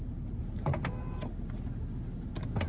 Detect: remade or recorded recorded